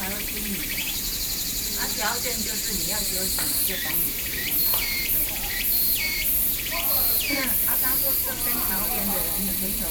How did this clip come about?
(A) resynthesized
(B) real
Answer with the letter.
A